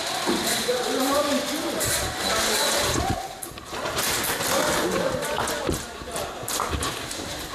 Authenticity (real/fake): real